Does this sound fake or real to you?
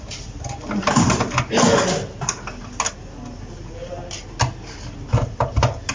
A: real